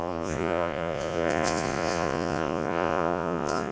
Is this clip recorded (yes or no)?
no